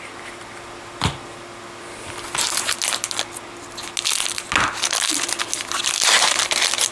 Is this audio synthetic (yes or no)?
no